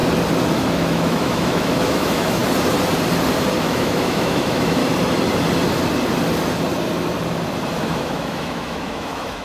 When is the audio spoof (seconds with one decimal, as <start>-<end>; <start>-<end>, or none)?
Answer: 0.5-2.4; 3.6-4.8; 7.8-9.4

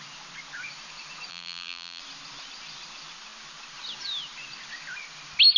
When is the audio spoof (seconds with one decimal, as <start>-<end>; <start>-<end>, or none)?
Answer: 1.3-2.0

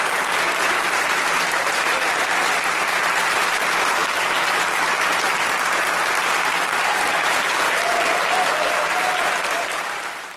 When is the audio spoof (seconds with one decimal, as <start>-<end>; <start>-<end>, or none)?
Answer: 0.0-10.4

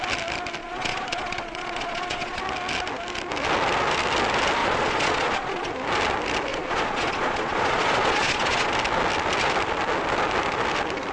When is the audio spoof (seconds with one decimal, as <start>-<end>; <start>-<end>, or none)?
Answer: 0.6-2.4; 4.6-5.7; 6.5-8.7

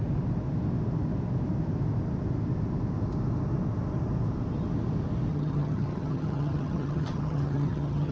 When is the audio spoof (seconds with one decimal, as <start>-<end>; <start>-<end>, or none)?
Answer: 5.3-8.1